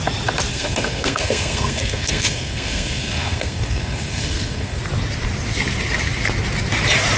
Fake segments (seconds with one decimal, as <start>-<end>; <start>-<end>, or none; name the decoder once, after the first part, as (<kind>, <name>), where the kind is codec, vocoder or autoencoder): 0.5-4.8 (codec, SNAC)